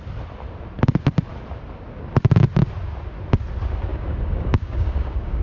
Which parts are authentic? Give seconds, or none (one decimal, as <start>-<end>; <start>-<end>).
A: 0.0-3.9